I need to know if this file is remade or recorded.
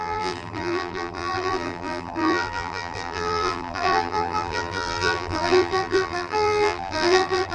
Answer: remade